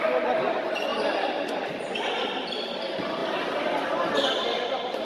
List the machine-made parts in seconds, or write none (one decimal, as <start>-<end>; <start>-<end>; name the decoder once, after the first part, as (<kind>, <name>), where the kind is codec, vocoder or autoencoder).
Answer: none